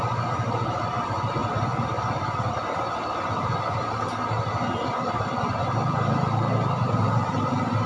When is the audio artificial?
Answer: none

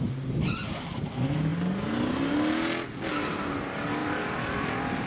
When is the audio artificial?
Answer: 4.0-5.1 (vocoder, BigVGAN v2)